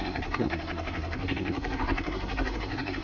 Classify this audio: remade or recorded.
remade